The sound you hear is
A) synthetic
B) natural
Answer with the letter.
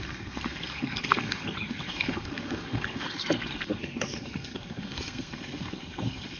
A